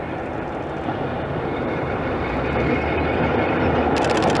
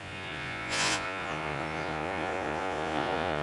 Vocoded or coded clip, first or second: second